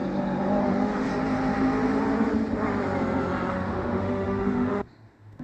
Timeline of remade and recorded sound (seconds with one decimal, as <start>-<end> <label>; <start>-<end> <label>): 0.0-0.6 recorded; 0.6-1.1 remade; 1.1-3.5 recorded; 3.5-5.4 remade